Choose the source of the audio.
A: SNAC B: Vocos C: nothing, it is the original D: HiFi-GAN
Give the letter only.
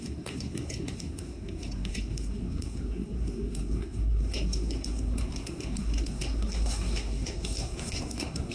A